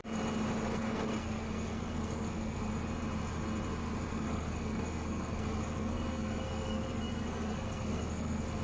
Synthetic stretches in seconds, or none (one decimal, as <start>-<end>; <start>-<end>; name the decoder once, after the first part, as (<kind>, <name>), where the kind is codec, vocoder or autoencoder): 0.7-2.7 (codec, SNAC); 4.1-8.6